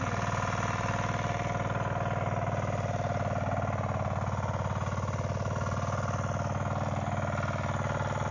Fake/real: real